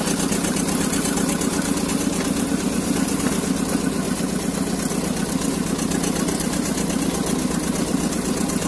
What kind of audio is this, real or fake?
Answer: real